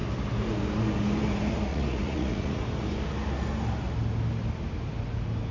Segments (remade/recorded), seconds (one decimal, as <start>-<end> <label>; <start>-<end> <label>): 0.0-1.7 recorded; 1.7-2.6 remade; 2.6-5.5 recorded